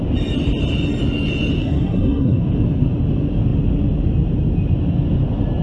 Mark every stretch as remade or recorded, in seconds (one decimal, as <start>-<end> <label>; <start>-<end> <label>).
0.0-1.6 recorded; 1.6-2.4 remade; 2.4-5.6 recorded